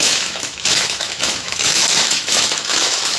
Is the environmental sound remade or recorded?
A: remade